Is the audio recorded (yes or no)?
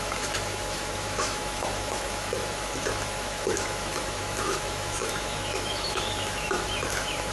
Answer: no